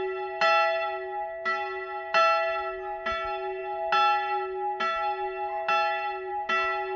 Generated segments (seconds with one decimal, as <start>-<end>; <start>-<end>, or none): none